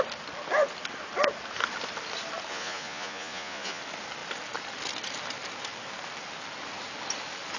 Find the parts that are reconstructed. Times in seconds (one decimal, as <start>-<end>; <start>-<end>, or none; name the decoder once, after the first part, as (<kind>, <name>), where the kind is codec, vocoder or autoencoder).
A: 2.5-3.8 (vocoder, Vocos)